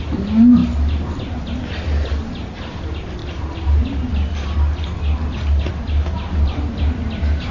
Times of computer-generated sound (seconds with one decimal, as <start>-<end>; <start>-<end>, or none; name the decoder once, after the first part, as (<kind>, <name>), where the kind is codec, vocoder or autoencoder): 0.0-0.6 (vocoder, BigVGAN v2); 2.6-3.2; 5.4-7.5

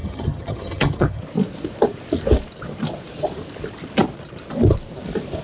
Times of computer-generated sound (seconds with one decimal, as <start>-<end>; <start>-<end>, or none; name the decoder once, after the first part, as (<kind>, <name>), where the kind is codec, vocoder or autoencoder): 0.0-1.2 (vocoder, HiFi-GAN)